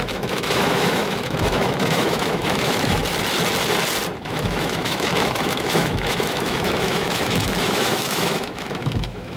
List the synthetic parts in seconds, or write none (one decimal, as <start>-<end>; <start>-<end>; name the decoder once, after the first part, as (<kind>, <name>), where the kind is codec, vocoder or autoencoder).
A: 0.0-3.0 (autoencoder, DAC-VAE); 4.2-9.4